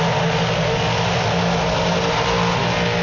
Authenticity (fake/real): real